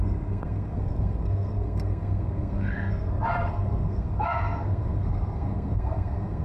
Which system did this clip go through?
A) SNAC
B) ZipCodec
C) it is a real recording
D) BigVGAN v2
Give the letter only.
A